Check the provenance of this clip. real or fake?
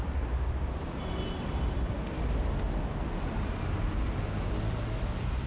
real